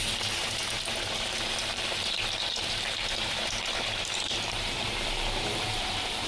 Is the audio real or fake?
fake